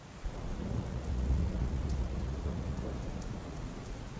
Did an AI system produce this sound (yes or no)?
yes